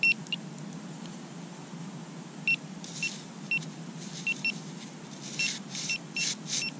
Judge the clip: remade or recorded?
recorded